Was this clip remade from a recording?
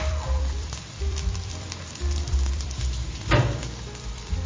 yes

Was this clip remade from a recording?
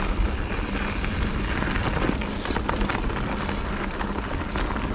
no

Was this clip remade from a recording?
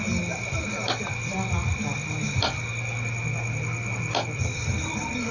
no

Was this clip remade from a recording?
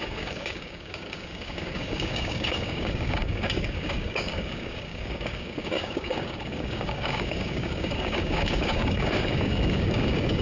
yes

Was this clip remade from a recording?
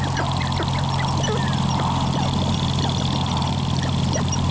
no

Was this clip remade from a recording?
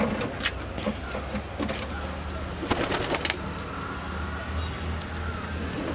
no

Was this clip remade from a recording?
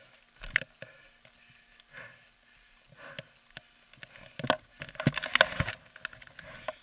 no